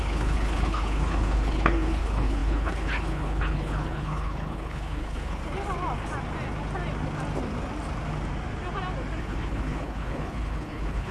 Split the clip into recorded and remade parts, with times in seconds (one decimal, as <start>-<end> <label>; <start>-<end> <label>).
0.0-5.4 remade; 5.4-9.2 recorded; 9.2-11.1 remade